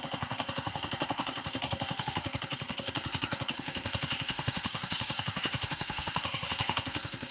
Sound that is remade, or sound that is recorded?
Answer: remade